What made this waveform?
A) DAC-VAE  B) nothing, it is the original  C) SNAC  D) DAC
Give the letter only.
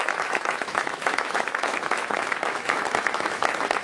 A